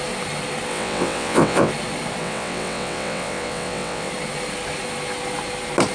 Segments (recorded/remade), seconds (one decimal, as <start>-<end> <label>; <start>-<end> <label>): 0.0-0.7 recorded; 0.7-1.7 remade; 1.7-2.2 recorded; 2.2-4.1 remade; 4.1-5.9 recorded